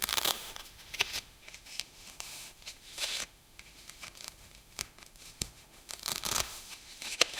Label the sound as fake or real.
fake